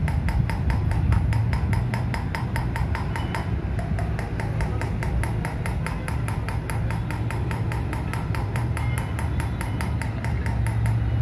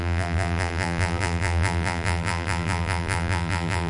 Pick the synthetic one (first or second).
second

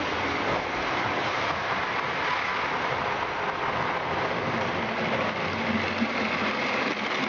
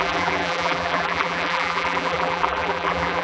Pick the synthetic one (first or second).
second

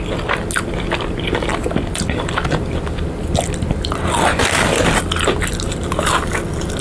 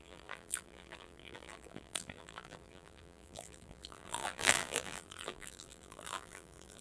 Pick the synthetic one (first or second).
second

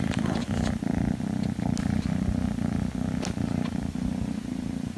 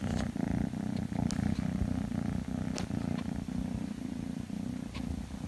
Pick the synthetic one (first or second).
second